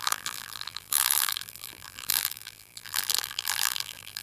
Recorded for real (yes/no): no